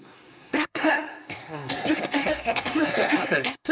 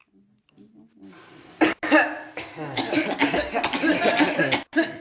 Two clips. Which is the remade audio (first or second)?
first